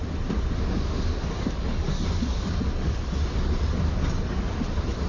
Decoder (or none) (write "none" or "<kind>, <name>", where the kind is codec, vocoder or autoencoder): none